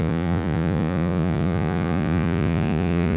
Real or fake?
fake